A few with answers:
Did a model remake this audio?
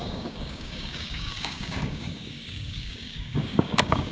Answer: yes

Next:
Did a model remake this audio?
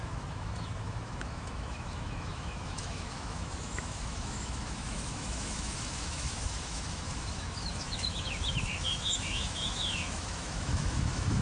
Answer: yes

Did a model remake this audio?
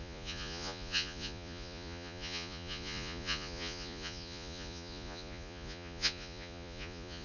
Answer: yes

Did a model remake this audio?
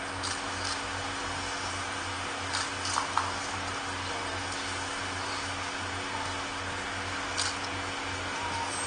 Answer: no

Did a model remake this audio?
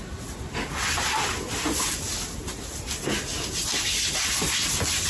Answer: no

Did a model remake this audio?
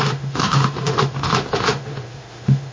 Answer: yes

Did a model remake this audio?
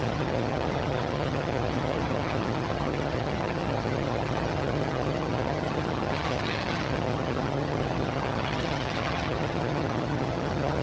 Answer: yes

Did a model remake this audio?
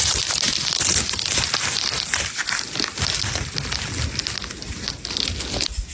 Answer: no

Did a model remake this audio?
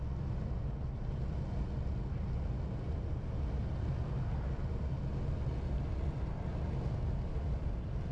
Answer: no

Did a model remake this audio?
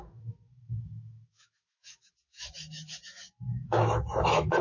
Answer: yes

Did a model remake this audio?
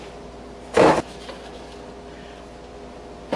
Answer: no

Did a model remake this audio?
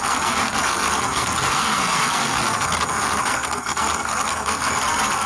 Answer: yes